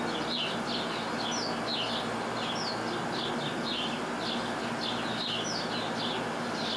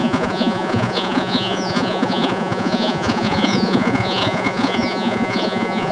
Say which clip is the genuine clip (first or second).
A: first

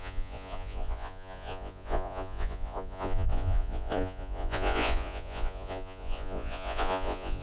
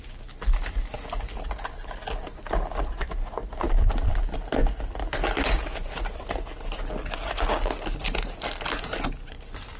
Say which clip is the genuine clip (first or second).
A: second